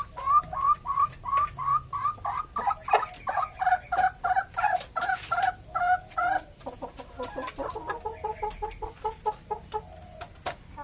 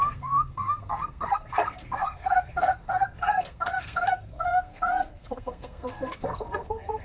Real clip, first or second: first